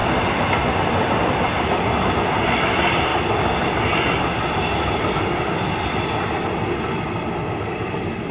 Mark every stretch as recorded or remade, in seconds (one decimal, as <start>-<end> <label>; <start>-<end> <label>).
0.0-8.3 recorded